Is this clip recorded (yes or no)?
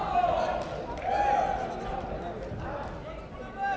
yes